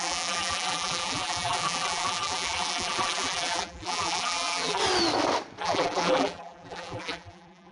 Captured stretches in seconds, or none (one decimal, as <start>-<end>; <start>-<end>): 4.8-5.6